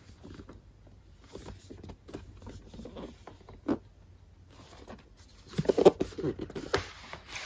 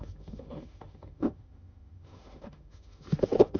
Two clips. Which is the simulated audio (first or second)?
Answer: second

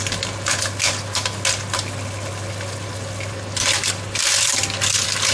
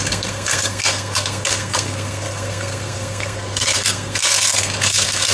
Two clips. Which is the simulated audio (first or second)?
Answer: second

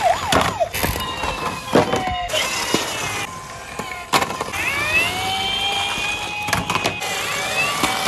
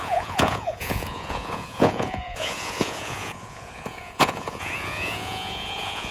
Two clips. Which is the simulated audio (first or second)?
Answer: second